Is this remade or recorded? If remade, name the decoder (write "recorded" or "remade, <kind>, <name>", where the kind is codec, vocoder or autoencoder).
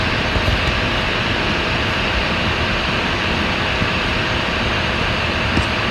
recorded